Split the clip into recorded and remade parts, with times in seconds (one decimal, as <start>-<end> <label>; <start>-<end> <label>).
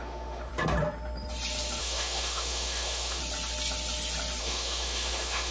0.0-0.5 remade; 0.5-1.8 recorded; 1.8-3.2 remade; 3.2-4.4 recorded; 4.4-5.5 remade